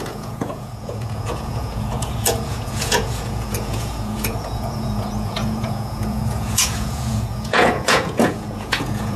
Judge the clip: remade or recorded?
remade